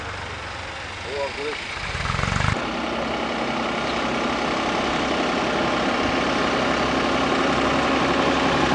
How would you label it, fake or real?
real